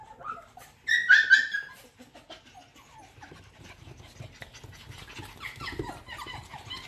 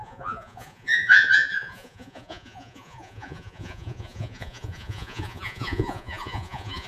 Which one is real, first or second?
first